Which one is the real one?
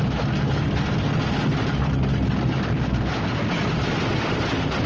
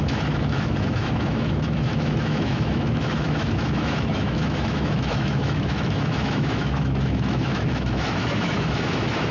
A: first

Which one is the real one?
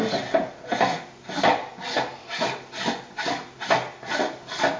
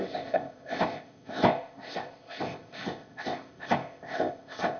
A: first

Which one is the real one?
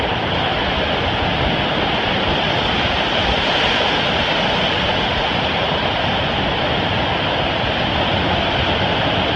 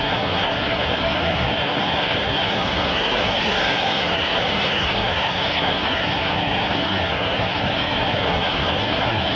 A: first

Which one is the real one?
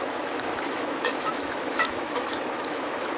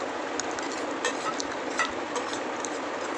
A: second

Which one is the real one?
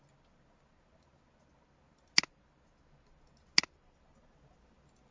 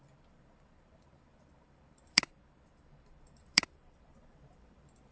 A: first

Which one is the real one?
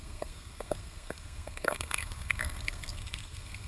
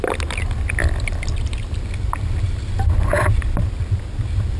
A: second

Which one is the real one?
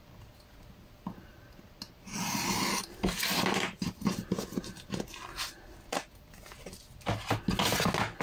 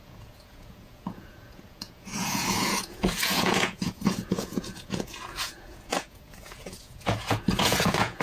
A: first